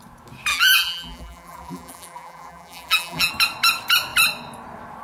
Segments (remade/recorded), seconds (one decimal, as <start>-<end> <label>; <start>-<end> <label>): 0.0-0.5 recorded; 0.5-3.3 remade; 3.3-5.0 recorded